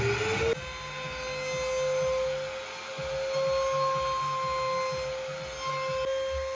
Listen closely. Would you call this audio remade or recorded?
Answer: recorded